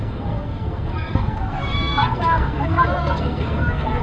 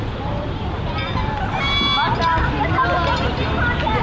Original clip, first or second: second